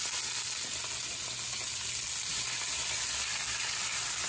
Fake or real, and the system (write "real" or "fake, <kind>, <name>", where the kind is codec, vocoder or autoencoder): real